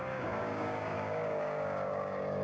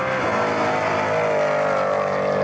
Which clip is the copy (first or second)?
first